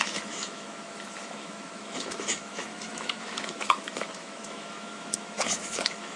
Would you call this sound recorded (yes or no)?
no